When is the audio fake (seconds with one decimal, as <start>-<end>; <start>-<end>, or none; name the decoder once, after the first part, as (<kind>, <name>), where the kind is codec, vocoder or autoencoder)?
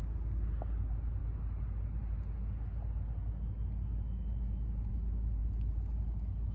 none